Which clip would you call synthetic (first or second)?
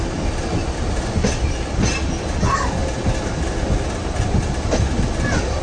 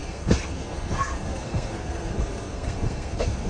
second